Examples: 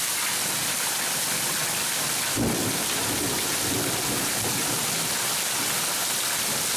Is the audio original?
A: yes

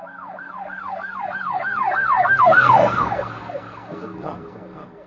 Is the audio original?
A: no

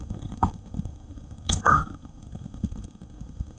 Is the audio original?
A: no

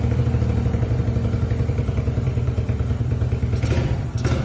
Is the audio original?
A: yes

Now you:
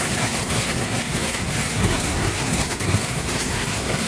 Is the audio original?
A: no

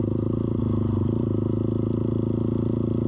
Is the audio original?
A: yes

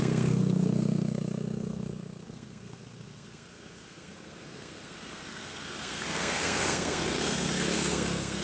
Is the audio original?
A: no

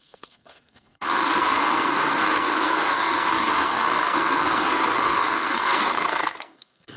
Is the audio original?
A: no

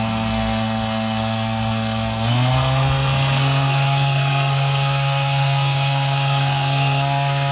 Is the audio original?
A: no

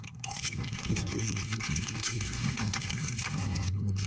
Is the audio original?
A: no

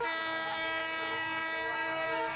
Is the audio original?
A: no